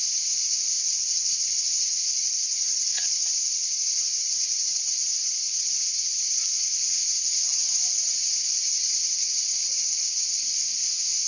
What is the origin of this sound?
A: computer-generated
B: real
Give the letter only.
A